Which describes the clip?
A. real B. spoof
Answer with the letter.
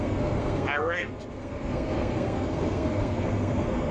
B